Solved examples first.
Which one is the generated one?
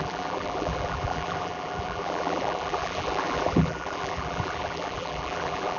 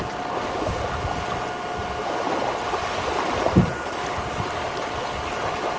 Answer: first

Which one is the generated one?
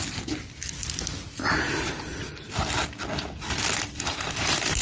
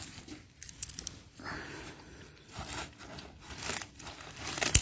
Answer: second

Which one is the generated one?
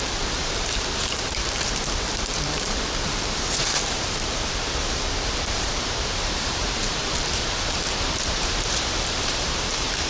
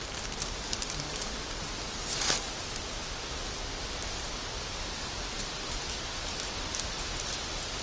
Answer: first